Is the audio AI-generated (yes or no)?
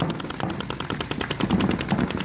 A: no